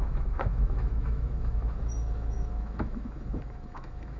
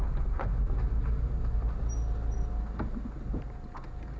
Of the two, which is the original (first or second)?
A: second